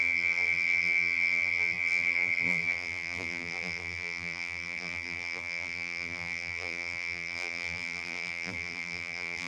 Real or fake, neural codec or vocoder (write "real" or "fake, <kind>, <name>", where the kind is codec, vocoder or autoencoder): fake, vocoder, BigVGAN v2